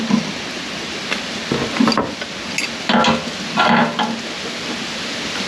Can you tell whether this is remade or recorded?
recorded